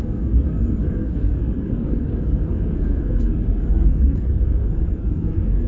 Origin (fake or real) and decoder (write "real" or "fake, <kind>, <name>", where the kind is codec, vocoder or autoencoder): fake, codec, SNAC